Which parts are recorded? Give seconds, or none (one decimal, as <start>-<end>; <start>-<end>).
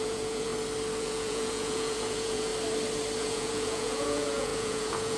0.5-1.0; 2.5-3.2